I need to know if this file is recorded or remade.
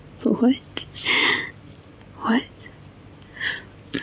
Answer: recorded